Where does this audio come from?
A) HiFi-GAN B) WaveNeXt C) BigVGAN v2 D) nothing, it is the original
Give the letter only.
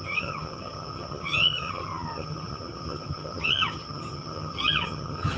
A